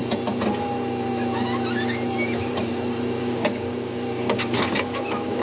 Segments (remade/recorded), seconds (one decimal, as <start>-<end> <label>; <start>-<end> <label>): 0.0-3.2 recorded; 3.2-5.4 remade